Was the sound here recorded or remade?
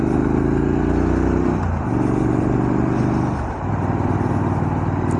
recorded